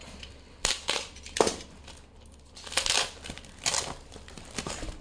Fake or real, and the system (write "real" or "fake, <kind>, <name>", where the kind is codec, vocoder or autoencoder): real